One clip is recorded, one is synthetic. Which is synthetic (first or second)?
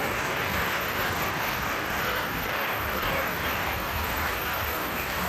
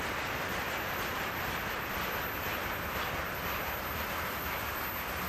first